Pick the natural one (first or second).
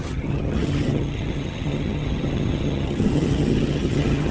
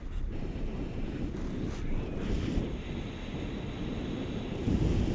second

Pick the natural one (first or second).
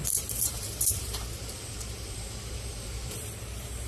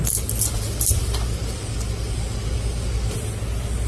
second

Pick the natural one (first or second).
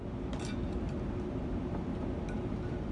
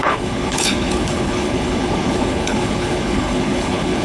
first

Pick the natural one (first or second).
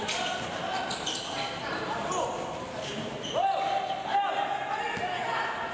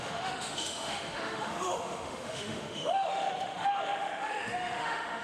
first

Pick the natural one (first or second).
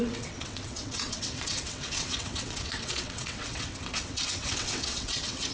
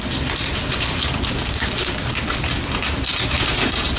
second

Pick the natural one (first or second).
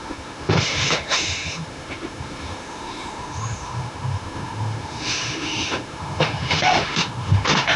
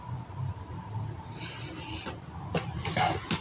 second